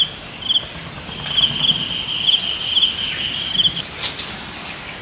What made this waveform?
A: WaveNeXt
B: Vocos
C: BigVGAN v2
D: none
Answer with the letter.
D